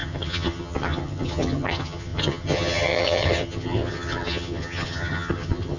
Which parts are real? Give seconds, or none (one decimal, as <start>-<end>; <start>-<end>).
none